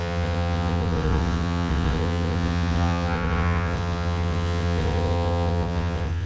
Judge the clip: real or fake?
fake